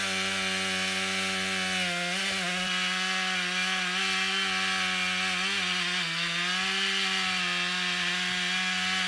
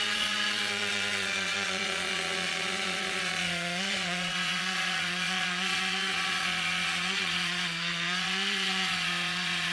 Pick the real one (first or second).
first